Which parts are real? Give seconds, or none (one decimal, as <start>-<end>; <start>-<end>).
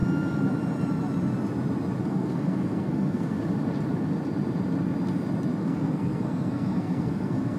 0.0-2.0; 3.4-5.6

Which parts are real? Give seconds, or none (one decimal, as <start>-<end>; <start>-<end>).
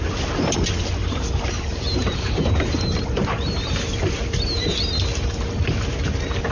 0.0-1.0; 4.9-6.5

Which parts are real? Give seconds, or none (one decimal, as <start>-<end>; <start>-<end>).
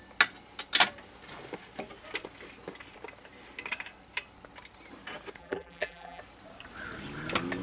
0.0-5.4; 6.2-7.6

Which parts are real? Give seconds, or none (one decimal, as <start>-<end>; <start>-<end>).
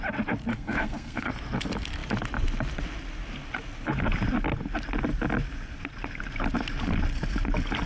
0.0-0.5; 1.3-7.9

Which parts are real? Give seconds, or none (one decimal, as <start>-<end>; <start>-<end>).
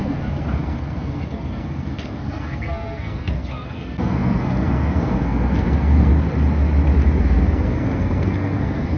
6.1-7.2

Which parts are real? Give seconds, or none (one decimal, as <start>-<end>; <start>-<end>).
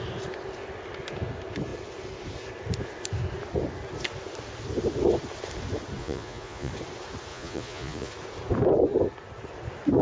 0.0-6.0; 6.7-7.3; 8.1-10.0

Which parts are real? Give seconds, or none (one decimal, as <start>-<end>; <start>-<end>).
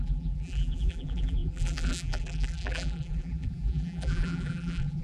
none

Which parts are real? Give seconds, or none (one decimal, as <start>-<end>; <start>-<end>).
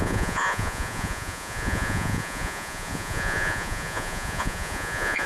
none